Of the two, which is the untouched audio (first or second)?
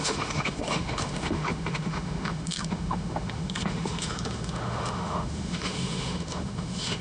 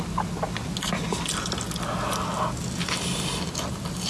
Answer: second